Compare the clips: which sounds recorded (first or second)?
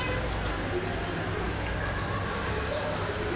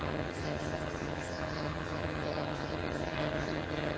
first